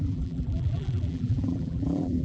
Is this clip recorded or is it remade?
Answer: remade